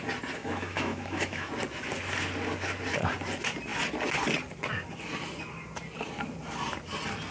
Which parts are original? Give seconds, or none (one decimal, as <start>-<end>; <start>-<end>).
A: 0.0-0.4; 1.5-7.3